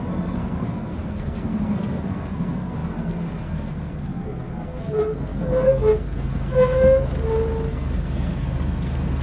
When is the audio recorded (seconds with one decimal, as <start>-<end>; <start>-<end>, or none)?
7.1-7.7